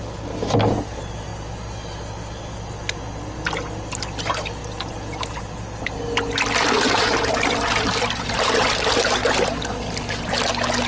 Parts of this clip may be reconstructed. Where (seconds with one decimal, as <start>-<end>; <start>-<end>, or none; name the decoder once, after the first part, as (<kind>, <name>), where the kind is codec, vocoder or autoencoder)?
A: none